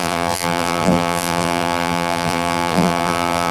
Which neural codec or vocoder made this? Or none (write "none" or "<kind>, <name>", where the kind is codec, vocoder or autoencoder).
vocoder, BigVGAN v2